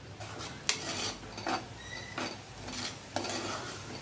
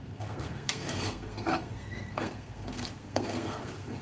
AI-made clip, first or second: second